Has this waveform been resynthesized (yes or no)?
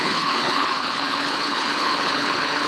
yes